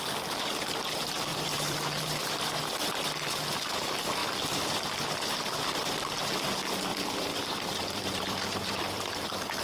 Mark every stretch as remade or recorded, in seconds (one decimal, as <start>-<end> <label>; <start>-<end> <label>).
0.0-1.3 recorded; 1.3-3.0 remade; 3.0-4.2 recorded; 4.2-6.0 remade; 6.0-6.9 recorded; 6.9-9.0 remade; 9.0-9.6 recorded